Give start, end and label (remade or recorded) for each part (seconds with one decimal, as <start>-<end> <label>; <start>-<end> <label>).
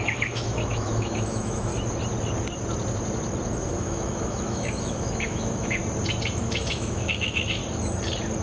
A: 0.0-1.7 remade; 1.7-3.8 recorded; 3.8-5.8 remade; 5.8-6.4 recorded; 6.4-7.6 remade; 7.6-8.4 recorded